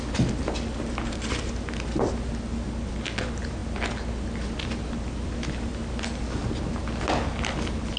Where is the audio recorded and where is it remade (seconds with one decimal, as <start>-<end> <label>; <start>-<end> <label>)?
0.0-8.0 recorded